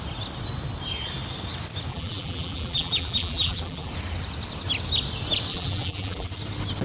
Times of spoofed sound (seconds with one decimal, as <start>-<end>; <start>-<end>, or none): 1.9-3.9; 5.5-6.3